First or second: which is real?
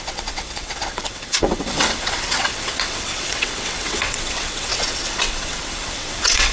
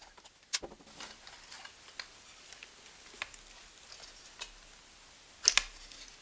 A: second